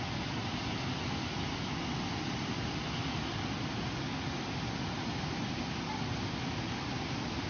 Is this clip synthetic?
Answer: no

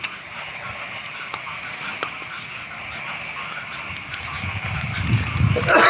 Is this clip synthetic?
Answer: no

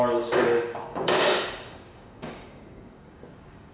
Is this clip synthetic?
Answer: yes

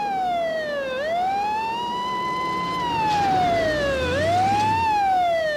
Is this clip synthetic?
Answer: no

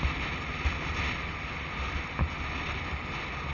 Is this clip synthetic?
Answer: no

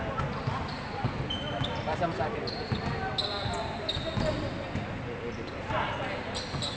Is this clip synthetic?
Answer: no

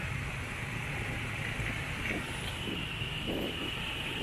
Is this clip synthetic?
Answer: no